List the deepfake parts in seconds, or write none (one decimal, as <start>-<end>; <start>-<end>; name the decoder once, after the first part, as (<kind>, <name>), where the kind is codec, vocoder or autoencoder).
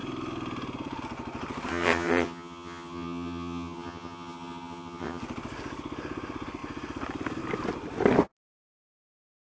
1.7-5.2 (vocoder, HiFi-GAN)